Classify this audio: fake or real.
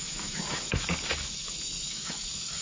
fake